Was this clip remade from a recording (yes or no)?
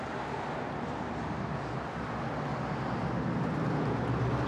no